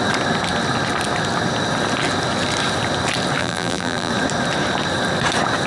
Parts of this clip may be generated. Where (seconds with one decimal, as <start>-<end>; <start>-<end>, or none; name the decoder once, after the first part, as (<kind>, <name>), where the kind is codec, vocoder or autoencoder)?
3.4-4.1 (vocoder, BigVGAN v2)